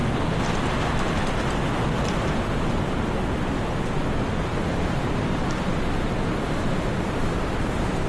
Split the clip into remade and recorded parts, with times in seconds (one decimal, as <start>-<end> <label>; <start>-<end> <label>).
0.0-4.5 recorded; 4.5-5.7 remade; 5.7-8.1 recorded